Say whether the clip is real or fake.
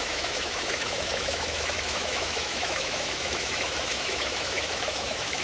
fake